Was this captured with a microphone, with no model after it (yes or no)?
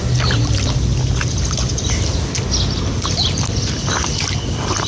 yes